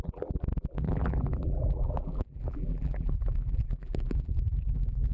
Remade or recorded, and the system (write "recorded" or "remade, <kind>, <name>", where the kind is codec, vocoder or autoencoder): remade, vocoder, BigVGAN v2